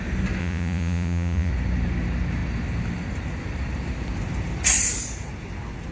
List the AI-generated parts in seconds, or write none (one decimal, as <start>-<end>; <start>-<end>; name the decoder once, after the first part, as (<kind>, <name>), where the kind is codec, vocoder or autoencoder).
0.4-1.5 (vocoder, Vocos)